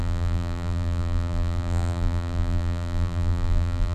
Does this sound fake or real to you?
fake